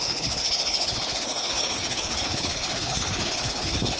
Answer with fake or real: fake